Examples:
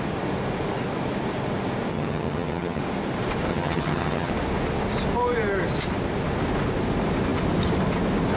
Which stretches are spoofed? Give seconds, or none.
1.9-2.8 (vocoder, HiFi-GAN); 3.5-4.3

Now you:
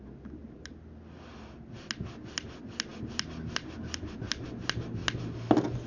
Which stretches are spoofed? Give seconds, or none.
none

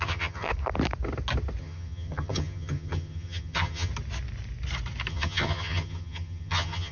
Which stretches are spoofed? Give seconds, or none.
0.0-0.5 (vocoder, HiFi-GAN); 1.6-3.9; 5.1-6.9

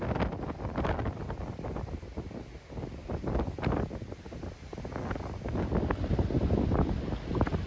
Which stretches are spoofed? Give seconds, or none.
none

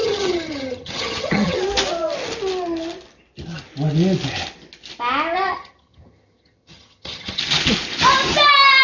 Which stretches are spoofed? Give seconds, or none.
0.0-1.6 (vocoder, HiFi-GAN); 5.5-7.4

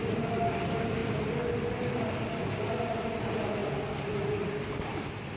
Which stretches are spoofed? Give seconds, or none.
none

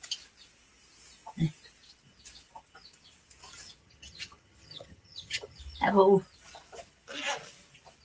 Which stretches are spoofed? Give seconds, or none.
3.8-5.6 (vocoder, HiFi-GAN)

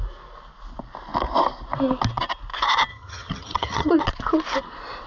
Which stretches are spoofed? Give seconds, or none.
2.9-3.9 (vocoder, HiFi-GAN)